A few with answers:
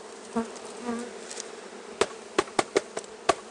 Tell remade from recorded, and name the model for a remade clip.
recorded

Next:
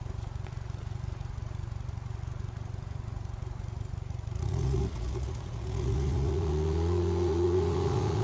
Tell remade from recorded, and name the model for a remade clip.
remade, vocoder, Vocos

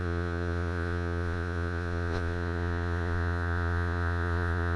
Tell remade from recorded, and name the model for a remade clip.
remade, vocoder, Vocos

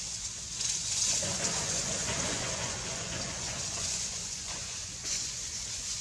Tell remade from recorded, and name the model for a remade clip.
remade, vocoder, Vocos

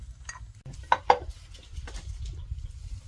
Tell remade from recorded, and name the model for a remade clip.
recorded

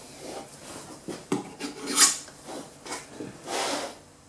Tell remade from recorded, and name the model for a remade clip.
recorded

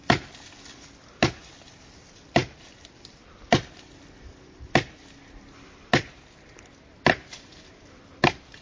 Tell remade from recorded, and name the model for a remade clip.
recorded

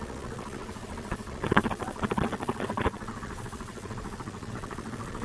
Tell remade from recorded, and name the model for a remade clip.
remade, vocoder, Vocos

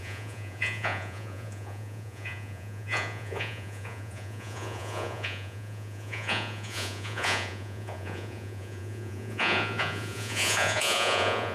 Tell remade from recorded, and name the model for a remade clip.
remade, vocoder, Vocos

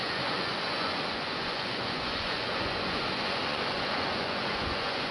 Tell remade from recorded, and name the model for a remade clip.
remade, vocoder, Vocos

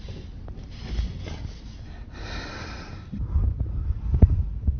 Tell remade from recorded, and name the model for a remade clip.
recorded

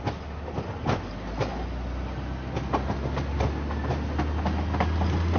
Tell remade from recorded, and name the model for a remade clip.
recorded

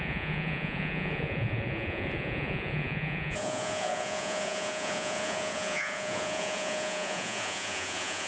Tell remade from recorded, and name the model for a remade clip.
remade, vocoder, Vocos